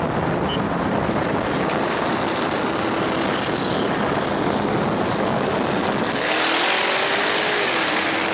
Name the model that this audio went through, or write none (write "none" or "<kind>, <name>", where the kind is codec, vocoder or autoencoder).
none